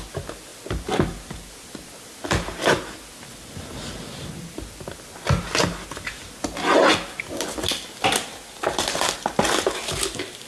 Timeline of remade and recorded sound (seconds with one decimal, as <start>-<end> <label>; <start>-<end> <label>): 0.0-10.5 recorded